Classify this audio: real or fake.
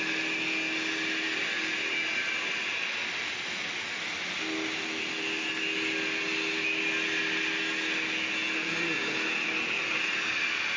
real